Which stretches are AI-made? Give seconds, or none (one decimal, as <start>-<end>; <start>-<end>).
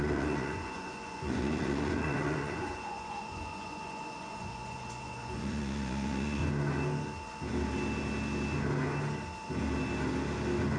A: 0.0-6.4